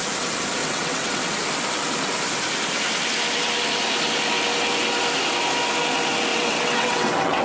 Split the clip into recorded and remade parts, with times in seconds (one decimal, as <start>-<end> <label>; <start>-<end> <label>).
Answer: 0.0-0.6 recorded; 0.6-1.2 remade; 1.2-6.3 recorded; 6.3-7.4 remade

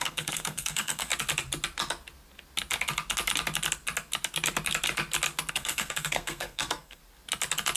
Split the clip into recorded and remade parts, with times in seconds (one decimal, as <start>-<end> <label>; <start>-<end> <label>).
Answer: 0.0-1.1 remade; 1.1-5.5 recorded; 5.5-7.0 remade; 7.0-7.8 recorded

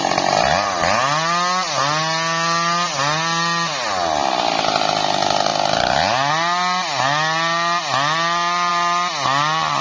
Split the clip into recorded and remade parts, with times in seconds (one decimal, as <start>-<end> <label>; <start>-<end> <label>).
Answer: 0.0-9.8 recorded

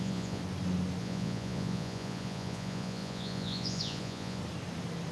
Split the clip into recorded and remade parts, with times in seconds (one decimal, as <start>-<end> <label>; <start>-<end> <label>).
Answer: 0.0-0.4 remade; 0.4-1.0 recorded; 1.0-4.4 remade; 4.4-5.1 recorded

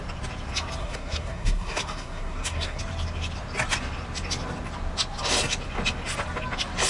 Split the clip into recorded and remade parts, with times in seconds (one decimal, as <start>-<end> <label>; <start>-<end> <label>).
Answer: 0.0-0.8 recorded; 0.8-2.8 remade; 2.8-6.9 recorded

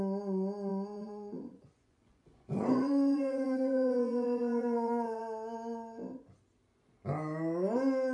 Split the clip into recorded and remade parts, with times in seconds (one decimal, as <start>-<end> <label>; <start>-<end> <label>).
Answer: 0.0-0.7 recorded; 0.7-5.2 remade; 5.2-8.1 recorded

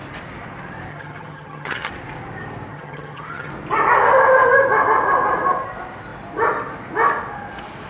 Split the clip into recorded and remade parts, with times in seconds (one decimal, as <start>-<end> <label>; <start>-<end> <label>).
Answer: 0.0-0.9 recorded; 0.9-1.9 remade; 1.9-2.7 recorded; 2.7-3.5 remade; 3.5-7.9 recorded

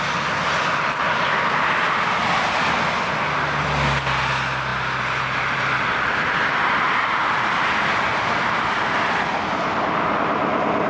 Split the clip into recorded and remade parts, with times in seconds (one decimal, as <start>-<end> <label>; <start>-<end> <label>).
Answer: 0.0-4.7 recorded; 4.7-8.7 remade; 8.7-10.9 recorded